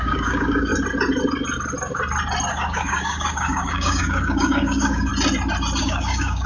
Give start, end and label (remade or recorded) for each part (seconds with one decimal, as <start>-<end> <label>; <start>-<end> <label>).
0.0-0.7 remade; 0.7-2.5 recorded; 2.5-5.1 remade; 5.1-5.8 recorded; 5.8-6.5 remade

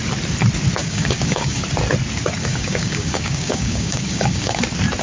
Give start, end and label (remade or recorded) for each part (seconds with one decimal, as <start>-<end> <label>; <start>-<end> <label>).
0.0-0.8 recorded; 0.8-1.6 remade; 1.6-2.5 recorded; 2.5-4.6 remade; 4.6-5.0 recorded

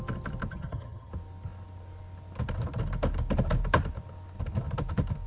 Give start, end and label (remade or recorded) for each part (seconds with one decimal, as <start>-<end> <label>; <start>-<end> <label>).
0.0-0.5 recorded; 0.5-1.1 remade; 1.1-5.3 recorded

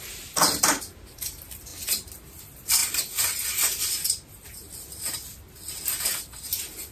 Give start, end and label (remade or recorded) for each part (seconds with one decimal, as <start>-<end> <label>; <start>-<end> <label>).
0.0-1.7 remade; 1.7-2.4 recorded; 2.4-2.8 remade; 2.8-6.9 recorded

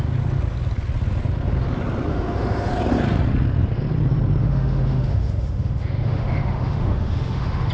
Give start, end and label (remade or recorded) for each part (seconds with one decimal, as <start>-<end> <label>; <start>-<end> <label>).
0.0-2.1 recorded; 2.1-2.7 remade; 2.7-4.4 recorded; 4.4-7.7 remade

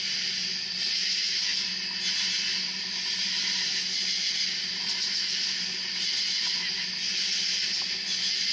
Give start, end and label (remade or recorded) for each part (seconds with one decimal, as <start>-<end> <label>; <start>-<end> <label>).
0.0-8.5 recorded

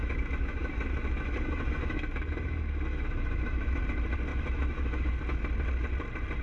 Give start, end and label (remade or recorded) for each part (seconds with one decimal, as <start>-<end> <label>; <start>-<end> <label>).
0.0-3.8 remade; 3.8-4.3 recorded; 4.3-5.1 remade; 5.1-6.4 recorded

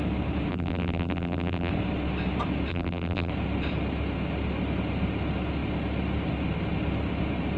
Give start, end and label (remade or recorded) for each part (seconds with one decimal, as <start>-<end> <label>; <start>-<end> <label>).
0.0-0.5 recorded; 0.5-1.7 remade; 1.7-2.7 recorded; 2.7-3.3 remade; 3.3-7.6 recorded